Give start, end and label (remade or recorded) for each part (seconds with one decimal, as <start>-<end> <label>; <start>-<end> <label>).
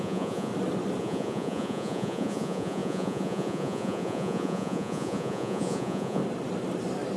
0.0-0.5 remade; 0.5-1.0 recorded; 1.0-6.2 remade; 6.2-7.2 recorded